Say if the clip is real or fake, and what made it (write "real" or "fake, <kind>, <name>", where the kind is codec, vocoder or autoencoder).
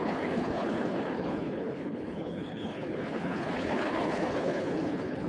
fake, codec, HILCodec